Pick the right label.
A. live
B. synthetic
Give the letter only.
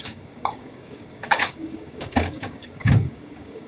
B